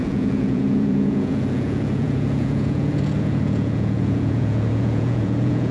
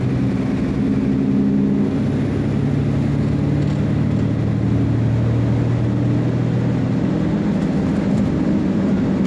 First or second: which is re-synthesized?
first